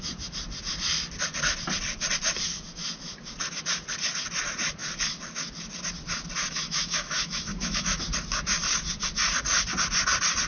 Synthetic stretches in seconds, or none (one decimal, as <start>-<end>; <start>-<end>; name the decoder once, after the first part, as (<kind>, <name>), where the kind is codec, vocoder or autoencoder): 6.4-8.0 (autoencoder, DAC-VAE)